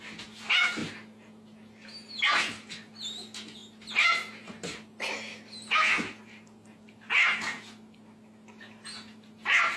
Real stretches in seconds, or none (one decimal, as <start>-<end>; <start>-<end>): 0.0-9.8